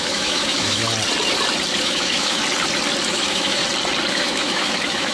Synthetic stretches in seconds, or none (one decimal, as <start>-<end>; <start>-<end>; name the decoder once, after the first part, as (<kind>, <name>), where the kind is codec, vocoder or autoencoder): 0.0-0.8 (autoencoder, DAC-VAE); 1.8-2.4; 3.1-3.6; 4.1-5.1